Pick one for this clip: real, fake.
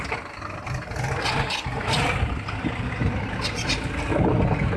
real